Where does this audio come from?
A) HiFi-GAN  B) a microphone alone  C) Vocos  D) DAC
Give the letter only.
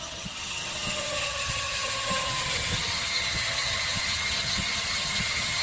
A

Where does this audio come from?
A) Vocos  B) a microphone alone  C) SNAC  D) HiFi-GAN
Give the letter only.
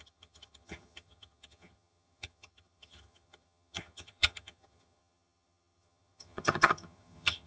D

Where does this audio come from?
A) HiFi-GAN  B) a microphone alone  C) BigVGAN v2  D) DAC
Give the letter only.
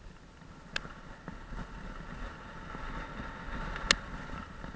B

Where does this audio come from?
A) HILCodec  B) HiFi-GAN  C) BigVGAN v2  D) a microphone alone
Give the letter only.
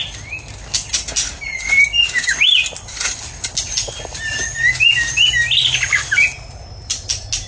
D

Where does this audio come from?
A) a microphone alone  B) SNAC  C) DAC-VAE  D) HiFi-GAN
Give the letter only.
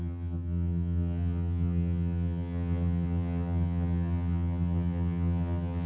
D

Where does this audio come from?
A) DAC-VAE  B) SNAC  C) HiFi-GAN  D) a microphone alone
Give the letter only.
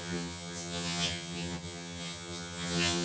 C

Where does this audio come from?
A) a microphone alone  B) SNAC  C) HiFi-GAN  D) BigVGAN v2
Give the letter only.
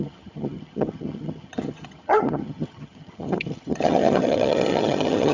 C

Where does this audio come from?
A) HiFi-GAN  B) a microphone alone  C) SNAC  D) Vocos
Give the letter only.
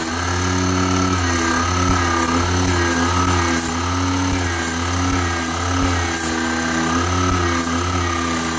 B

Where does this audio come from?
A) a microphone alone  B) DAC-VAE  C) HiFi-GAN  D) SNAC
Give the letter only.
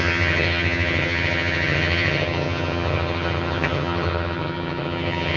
C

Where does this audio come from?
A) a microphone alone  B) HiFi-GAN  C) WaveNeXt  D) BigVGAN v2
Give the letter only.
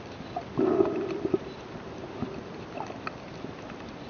A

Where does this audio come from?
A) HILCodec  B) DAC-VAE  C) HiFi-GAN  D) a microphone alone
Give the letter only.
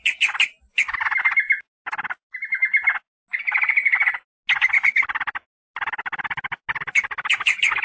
D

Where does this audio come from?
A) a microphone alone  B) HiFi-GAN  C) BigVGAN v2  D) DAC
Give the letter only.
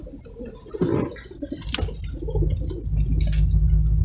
A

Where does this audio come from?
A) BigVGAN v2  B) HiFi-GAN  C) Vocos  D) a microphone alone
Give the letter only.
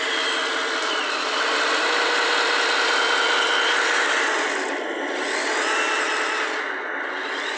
D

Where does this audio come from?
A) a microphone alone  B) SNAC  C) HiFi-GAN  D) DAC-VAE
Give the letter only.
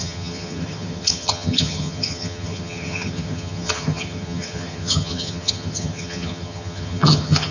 C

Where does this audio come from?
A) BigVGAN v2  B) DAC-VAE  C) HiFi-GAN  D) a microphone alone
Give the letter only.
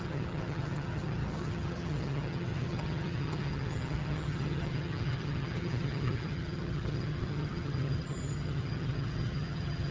C